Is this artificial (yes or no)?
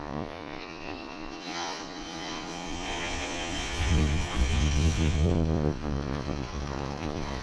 yes